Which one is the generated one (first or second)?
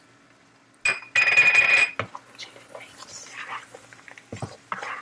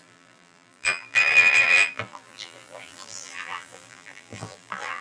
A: second